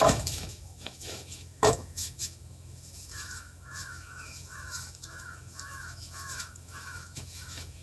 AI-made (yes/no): yes